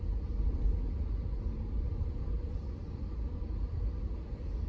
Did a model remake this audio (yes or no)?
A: no